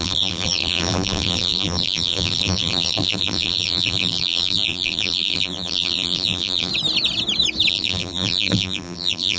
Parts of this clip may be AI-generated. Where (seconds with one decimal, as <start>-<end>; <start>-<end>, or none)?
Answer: 0.0-6.7; 7.7-9.4